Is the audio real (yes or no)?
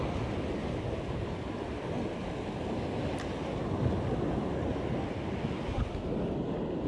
yes